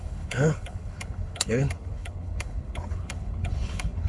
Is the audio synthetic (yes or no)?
yes